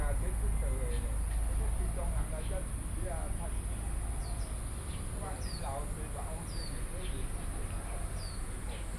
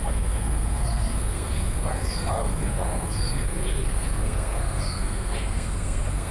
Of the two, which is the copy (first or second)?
second